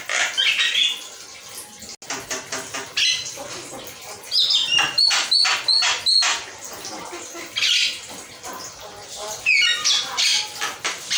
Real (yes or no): yes